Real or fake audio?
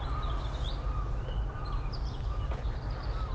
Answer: real